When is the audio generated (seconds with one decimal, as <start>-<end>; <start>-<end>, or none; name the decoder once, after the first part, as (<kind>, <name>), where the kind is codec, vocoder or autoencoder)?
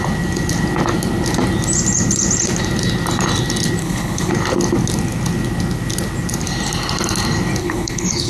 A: 3.8-4.3 (codec, HILCodec); 7.6-8.3